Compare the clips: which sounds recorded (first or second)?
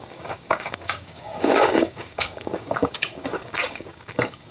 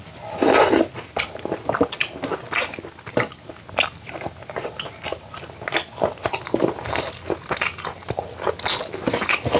second